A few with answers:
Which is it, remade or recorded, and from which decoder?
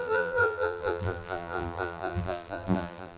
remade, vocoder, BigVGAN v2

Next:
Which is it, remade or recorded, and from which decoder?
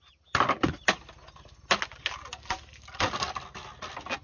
recorded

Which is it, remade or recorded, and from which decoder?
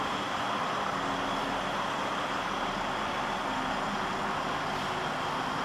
recorded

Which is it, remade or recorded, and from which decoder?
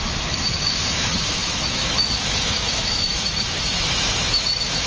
remade, autoencoder, DAC-VAE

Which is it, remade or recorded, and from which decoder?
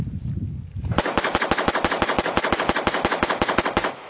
recorded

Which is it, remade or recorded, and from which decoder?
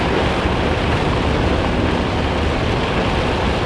recorded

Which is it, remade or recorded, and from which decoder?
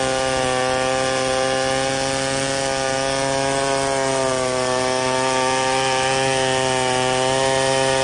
recorded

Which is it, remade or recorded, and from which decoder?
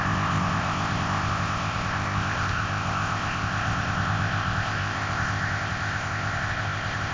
remade, codec, ZipCodec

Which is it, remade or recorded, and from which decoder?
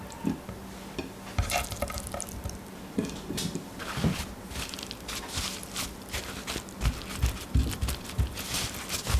recorded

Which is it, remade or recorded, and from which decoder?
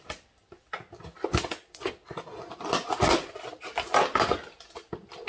recorded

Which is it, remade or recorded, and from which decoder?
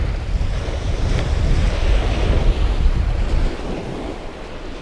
recorded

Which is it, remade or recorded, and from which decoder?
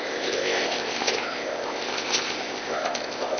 remade, codec, ZipCodec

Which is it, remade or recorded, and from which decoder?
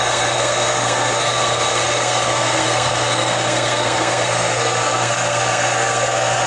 remade, codec, SNAC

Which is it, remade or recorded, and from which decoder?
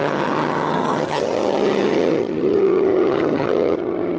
remade, vocoder, HiFi-GAN